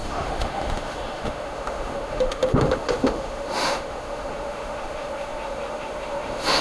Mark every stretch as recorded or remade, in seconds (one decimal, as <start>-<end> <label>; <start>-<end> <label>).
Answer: 0.0-6.6 remade